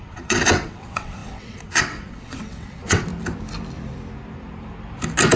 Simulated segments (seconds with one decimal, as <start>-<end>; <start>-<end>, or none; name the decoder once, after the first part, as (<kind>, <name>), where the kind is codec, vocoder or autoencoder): 0.0-3.1 (vocoder, WaveNeXt)